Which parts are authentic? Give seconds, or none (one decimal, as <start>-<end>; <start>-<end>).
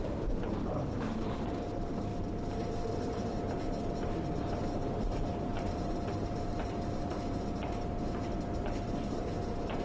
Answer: 2.1-2.9